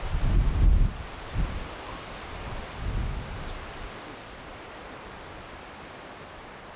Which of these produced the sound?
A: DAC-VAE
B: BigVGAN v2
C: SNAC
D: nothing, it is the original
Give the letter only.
D